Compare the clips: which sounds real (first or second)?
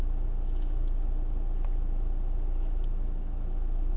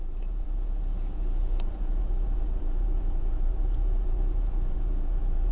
first